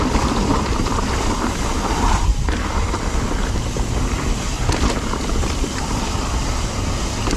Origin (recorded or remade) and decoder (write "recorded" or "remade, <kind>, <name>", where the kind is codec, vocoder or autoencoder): remade, vocoder, BigVGAN v2